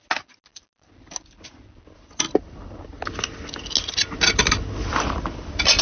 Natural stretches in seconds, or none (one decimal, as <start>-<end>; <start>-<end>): 0.0-5.8